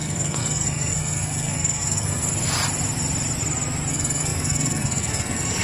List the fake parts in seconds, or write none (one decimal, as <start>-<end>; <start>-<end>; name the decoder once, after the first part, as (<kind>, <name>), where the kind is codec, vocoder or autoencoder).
0.0-2.3 (codec, SNAC); 3.9-5.6